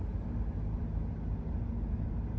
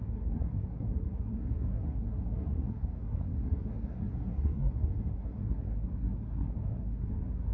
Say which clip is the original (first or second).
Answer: first